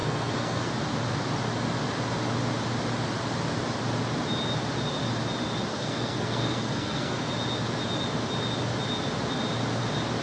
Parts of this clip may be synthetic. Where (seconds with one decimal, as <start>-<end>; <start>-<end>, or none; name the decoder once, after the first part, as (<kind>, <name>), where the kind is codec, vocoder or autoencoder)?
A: 0.0-0.7 (codec, SNAC); 5.7-7.3